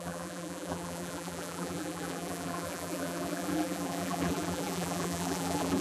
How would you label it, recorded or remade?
remade